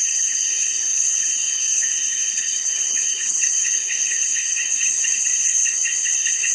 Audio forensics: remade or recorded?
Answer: remade